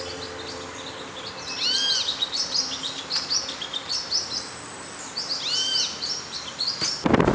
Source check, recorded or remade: recorded